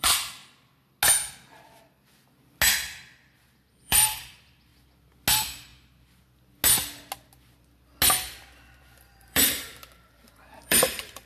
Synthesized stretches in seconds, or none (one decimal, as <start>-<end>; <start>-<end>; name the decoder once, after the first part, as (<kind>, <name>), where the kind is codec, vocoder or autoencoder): 0.0-0.4 (vocoder, BigVGAN v2); 3.7-4.7; 5.3-5.7; 8.8-11.3